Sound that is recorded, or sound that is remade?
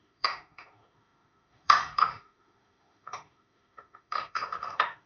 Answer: remade